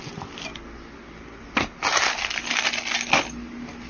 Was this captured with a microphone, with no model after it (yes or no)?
yes